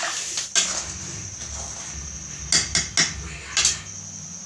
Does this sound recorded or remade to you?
recorded